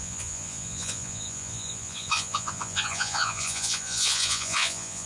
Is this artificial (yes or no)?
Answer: yes